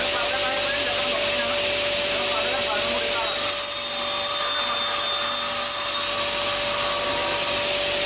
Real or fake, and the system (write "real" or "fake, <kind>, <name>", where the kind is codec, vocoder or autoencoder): real